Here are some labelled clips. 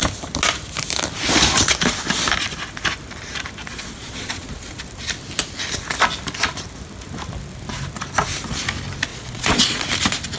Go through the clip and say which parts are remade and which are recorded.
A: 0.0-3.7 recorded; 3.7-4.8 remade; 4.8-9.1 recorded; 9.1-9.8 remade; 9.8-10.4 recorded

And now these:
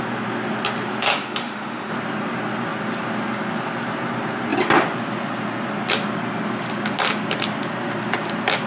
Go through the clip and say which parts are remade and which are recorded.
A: 0.0-1.1 recorded; 1.1-1.9 remade; 1.9-8.7 recorded

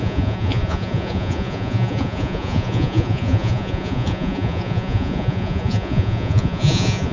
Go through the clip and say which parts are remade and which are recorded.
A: 0.0-7.1 remade

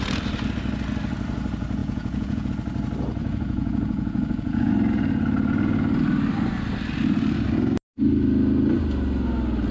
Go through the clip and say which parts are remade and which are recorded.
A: 0.0-1.8 recorded; 1.8-2.5 remade; 2.5-3.2 recorded; 3.2-4.7 remade; 4.7-9.7 recorded

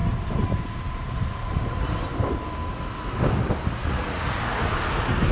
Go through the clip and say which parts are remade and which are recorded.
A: 0.0-3.8 recorded; 3.8-4.4 remade; 4.4-5.3 recorded

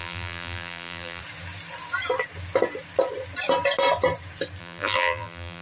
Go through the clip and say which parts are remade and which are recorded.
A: 0.0-1.2 remade; 1.2-4.6 recorded; 4.6-5.6 remade

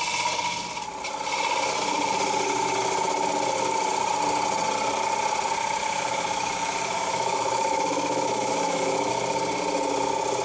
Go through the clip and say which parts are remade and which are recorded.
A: 0.0-5.8 recorded; 5.8-9.1 remade; 9.1-10.4 recorded